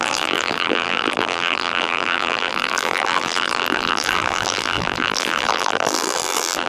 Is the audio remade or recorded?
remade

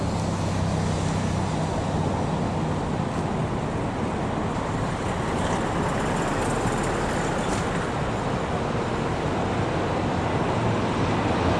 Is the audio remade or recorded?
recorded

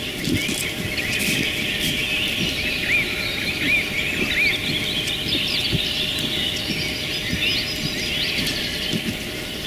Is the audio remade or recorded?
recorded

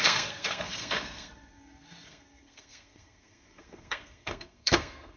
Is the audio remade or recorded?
remade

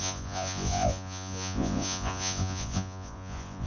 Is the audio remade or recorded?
remade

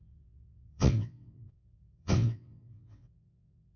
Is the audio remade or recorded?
remade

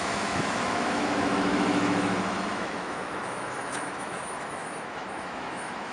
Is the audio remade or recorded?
remade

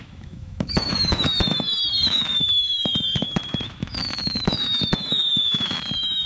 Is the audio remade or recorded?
remade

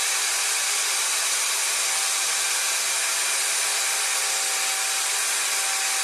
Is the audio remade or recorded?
recorded